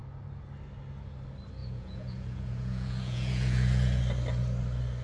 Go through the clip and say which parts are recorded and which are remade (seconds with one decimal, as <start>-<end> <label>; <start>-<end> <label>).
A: 0.0-1.6 recorded; 1.6-4.0 remade; 4.0-5.0 recorded